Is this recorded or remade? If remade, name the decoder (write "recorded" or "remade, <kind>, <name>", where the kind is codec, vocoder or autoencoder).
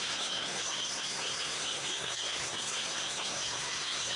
remade, codec, SNAC